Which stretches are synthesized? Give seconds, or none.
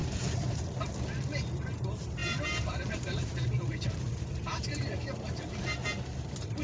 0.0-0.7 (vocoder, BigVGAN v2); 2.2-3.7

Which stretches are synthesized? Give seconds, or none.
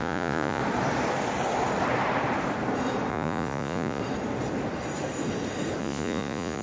0.0-0.6 (vocoder, Vocos); 3.1-4.0; 5.8-6.6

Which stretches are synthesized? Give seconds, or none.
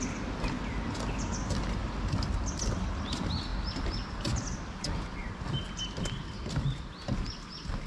none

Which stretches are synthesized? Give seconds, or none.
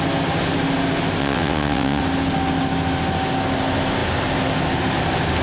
1.2-2.0 (vocoder, WaveNeXt)